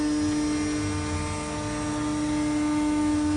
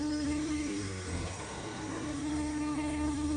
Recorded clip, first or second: first